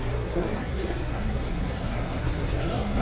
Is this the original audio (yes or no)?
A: no